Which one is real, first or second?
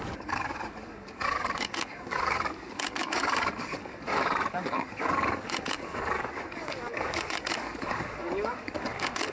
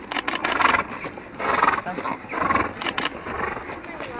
second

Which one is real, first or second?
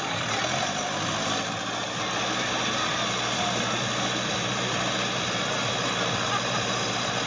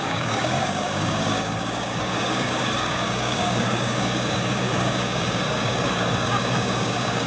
first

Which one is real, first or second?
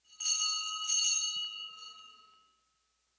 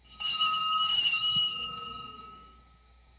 first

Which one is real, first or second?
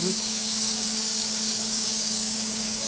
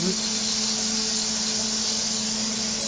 second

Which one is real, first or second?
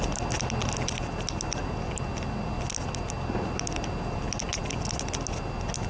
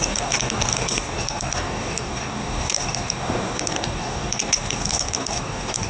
first